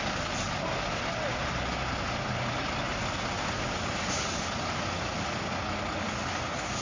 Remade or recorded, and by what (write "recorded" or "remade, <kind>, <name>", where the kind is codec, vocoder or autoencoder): recorded